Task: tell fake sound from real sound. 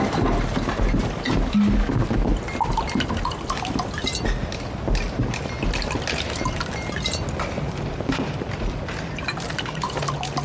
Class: real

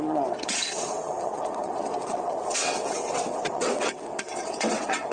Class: fake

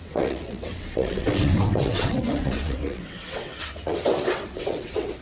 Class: fake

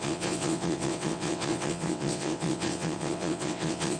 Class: fake